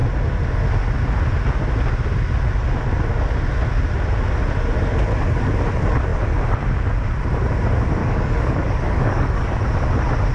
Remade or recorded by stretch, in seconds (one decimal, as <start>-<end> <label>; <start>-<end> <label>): 0.0-8.0 recorded; 8.0-9.6 remade; 9.6-10.3 recorded